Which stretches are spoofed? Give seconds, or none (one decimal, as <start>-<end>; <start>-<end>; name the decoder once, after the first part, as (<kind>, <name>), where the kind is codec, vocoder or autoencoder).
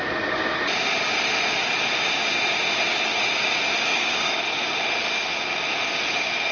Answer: 3.8-4.4 (codec, DAC)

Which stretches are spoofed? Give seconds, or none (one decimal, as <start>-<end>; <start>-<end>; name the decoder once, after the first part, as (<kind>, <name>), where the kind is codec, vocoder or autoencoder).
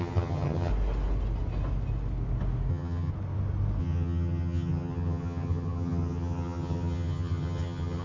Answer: 0.0-0.7 (vocoder, HiFi-GAN); 2.7-3.1; 3.8-8.0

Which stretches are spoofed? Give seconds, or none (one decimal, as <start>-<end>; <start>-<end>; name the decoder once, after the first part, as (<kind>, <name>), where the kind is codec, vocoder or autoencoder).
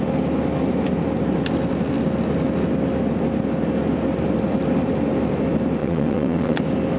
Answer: 5.8-6.6 (vocoder, WaveNeXt)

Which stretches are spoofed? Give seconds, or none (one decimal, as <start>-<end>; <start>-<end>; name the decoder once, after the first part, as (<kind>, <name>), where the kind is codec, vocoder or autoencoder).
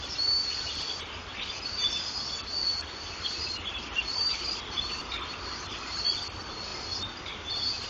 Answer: none